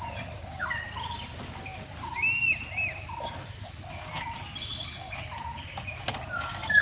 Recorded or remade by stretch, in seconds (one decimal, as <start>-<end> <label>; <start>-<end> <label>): 0.0-6.8 recorded

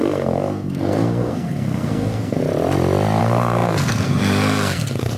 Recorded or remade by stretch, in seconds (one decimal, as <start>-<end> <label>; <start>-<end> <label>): 0.0-2.4 remade; 2.4-3.2 recorded; 3.2-5.2 remade